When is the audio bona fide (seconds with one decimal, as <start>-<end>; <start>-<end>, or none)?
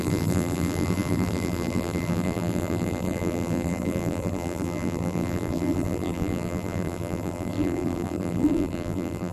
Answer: none